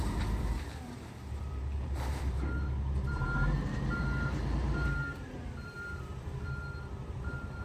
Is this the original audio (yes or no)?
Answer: no